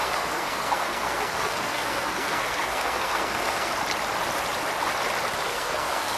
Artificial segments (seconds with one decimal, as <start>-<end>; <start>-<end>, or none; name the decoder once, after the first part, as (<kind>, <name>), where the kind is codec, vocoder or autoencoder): 0.0-3.7 (codec, SNAC); 5.5-6.2